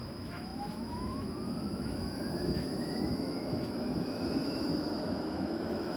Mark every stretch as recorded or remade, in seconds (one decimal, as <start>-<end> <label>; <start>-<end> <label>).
0.0-6.0 remade